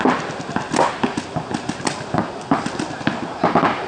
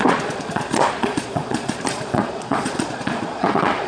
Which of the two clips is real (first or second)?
first